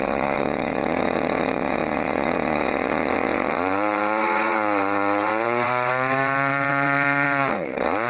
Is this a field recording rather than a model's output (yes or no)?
no